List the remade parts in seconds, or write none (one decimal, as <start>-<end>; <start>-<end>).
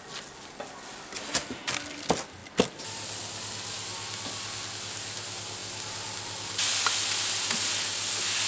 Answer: none